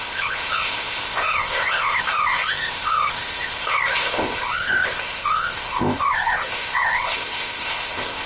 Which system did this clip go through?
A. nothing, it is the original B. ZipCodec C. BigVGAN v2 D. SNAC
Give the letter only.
B